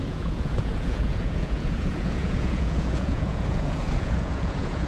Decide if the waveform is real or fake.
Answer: fake